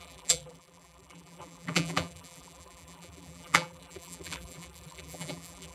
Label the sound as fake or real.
fake